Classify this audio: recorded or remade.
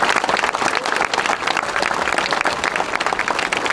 recorded